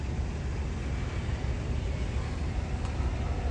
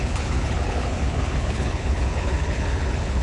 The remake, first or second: second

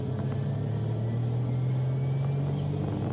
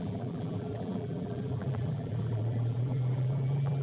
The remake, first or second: second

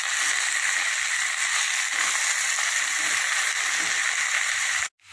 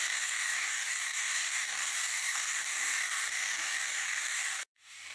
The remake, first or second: second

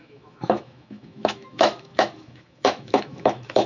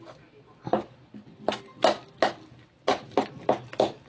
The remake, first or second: first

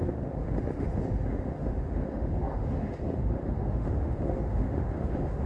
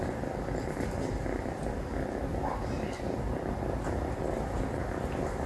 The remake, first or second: first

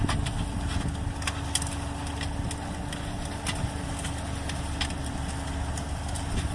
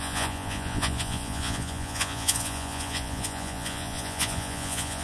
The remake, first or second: second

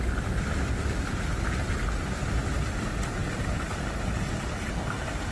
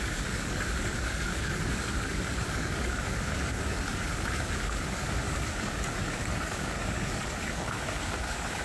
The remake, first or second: second